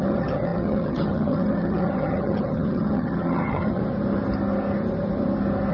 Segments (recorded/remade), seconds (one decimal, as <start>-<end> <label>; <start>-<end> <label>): 0.0-3.8 remade; 3.8-5.7 recorded